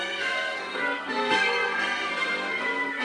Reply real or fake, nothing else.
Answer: fake